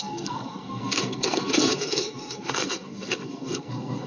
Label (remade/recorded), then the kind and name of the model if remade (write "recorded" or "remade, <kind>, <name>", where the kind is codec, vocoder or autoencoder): remade, codec, SNAC